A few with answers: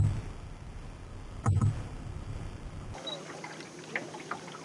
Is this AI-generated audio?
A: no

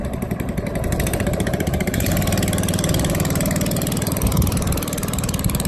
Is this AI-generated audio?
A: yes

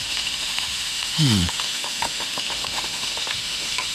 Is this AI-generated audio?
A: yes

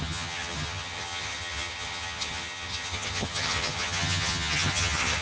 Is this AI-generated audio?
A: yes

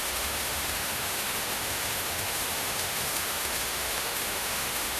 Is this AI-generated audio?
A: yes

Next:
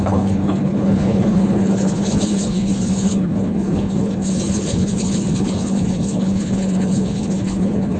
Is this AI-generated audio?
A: yes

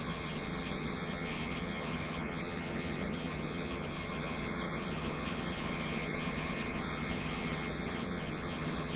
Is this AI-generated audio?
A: yes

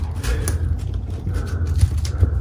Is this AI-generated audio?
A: no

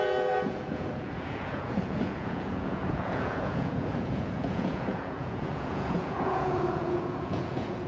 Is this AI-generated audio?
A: yes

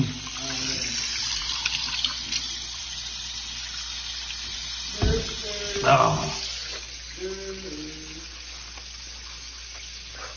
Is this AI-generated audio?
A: no